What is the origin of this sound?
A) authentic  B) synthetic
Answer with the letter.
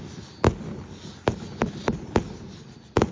A